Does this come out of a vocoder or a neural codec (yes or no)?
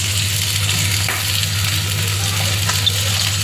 no